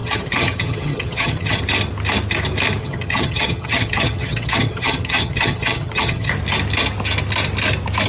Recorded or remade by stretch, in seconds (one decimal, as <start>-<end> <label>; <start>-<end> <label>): 0.0-1.6 remade; 1.6-2.8 recorded; 2.8-6.3 remade; 6.3-8.1 recorded